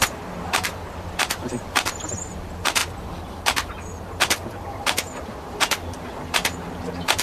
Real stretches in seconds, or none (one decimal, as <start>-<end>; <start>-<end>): 0.7-1.4; 2.8-6.0